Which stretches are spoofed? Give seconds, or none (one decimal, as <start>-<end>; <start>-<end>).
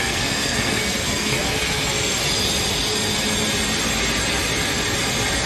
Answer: 0.0-2.2